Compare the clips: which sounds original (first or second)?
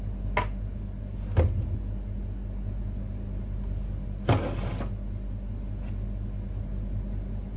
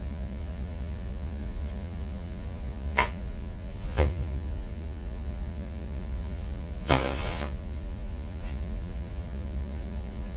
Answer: first